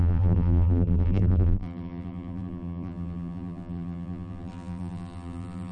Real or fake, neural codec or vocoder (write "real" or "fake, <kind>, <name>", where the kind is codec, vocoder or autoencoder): fake, vocoder, BigVGAN v2